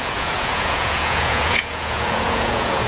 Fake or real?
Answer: fake